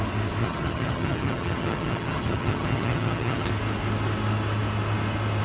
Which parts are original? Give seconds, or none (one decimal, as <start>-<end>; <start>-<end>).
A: 0.0-0.4; 3.5-5.4